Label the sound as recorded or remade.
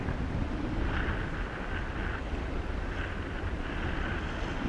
recorded